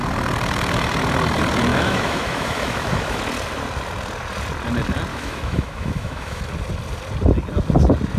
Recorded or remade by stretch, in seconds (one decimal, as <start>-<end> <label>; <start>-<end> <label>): 0.0-1.7 recorded; 1.7-3.2 remade; 3.2-5.1 recorded; 5.1-6.4 remade; 6.4-8.2 recorded